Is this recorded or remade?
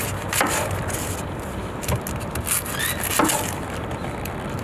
recorded